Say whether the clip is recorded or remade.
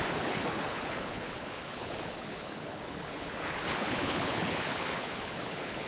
remade